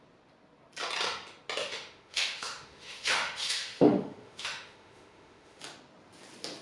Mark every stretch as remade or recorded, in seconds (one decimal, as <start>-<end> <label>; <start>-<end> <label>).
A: 0.0-1.6 recorded; 1.6-5.6 remade; 5.6-6.6 recorded

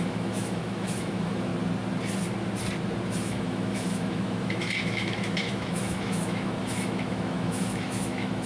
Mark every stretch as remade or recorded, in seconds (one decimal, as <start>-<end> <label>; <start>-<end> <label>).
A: 0.0-1.5 remade; 1.5-3.2 recorded; 3.2-8.5 remade

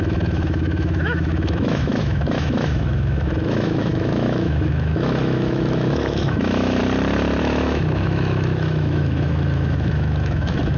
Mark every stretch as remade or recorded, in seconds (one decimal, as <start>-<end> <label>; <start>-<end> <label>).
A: 0.0-6.8 remade; 6.8-7.4 recorded; 7.4-10.8 remade